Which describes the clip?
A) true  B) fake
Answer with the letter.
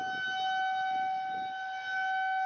A